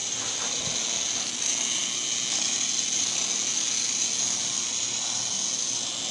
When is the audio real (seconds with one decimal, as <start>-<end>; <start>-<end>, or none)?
0.0-6.1